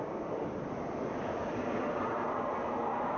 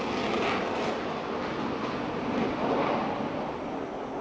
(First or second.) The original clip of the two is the second